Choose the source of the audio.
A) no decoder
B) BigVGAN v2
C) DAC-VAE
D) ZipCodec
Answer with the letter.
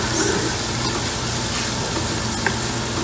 A